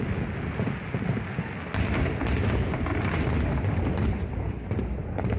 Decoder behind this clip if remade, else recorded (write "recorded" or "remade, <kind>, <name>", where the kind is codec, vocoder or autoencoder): recorded